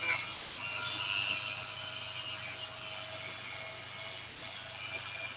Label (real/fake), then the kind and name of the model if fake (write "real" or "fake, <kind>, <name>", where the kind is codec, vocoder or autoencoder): real